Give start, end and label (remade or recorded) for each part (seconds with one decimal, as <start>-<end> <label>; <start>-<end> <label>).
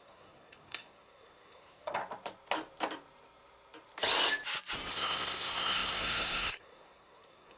0.0-2.0 remade; 2.0-4.9 recorded; 4.9-7.6 remade